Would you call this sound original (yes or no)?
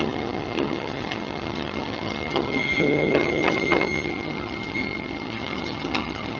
no